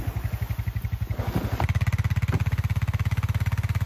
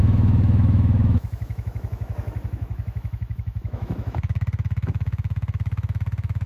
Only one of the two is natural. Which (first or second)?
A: first